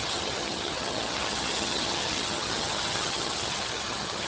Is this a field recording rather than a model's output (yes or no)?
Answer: no